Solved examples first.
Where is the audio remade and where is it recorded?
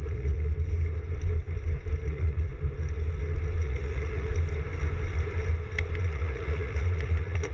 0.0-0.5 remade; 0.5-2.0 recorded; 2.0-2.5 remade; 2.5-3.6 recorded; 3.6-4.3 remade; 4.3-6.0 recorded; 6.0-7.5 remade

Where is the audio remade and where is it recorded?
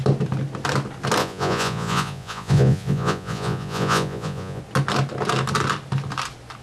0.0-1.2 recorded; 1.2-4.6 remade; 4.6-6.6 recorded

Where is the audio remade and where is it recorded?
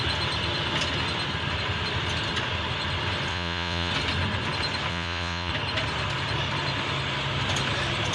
0.0-3.3 recorded; 3.3-3.9 remade; 3.9-4.9 recorded; 4.9-5.5 remade; 5.5-8.1 recorded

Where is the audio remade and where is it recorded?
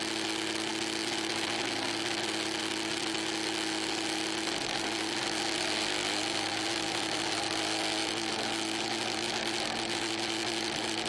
0.0-11.1 recorded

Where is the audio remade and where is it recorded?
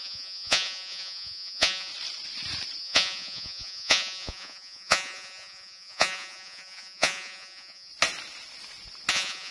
0.0-1.9 remade; 1.9-2.8 recorded; 2.8-7.9 remade; 7.9-9.1 recorded; 9.1-9.5 remade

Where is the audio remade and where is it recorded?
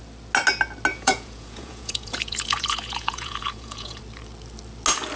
0.0-0.9 recorded; 0.9-4.0 remade; 4.0-5.2 recorded